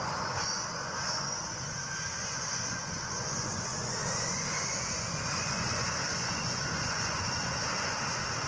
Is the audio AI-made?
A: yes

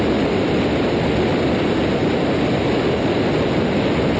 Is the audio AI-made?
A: no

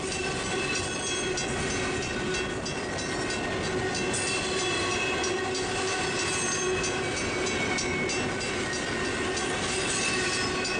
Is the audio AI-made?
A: no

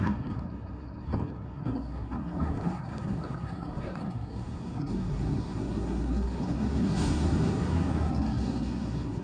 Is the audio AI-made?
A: yes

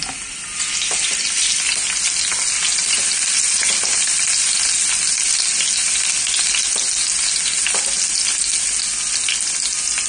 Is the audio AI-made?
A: no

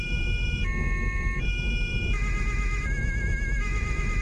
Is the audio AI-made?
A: yes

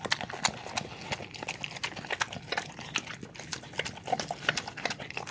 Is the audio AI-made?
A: no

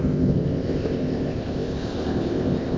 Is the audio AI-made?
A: yes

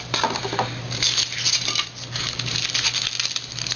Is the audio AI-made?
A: no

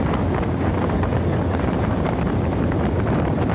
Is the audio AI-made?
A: no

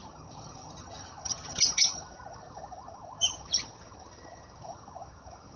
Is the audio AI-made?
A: yes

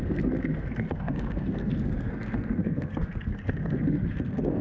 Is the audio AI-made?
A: yes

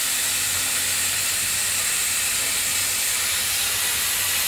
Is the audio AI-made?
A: no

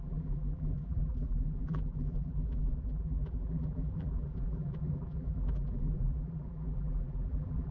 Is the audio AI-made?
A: yes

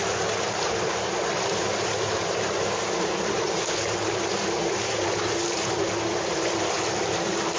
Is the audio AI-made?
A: yes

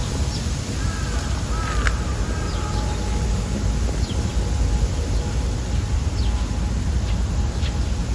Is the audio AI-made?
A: no